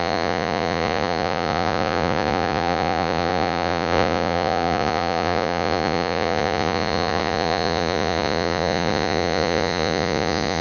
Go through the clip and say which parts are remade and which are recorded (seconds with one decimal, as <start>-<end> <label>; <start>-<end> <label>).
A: 0.0-10.6 remade